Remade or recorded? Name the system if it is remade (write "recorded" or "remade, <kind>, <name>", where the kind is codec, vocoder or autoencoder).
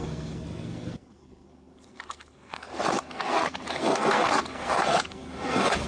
remade, codec, SNAC